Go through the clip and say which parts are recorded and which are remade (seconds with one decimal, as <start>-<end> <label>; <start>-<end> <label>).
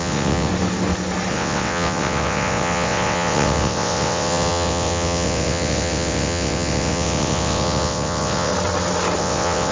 0.0-0.5 remade; 0.5-1.3 recorded; 1.3-8.5 remade; 8.5-9.2 recorded; 9.2-9.7 remade